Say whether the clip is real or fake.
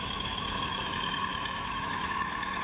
fake